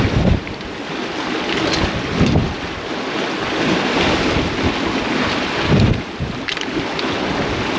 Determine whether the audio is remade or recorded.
recorded